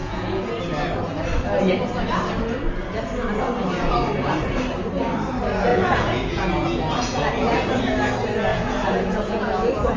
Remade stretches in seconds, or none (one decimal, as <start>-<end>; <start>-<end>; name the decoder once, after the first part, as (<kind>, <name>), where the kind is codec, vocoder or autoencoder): 0.0-0.6 (vocoder, Vocos); 5.7-7.8; 8.5-10.0